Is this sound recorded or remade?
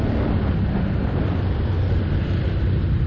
recorded